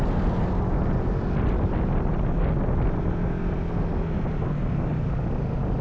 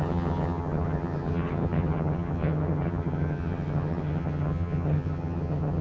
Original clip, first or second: first